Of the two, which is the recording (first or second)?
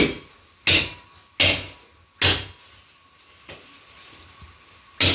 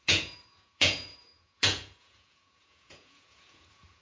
first